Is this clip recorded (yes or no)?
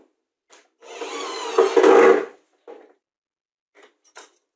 yes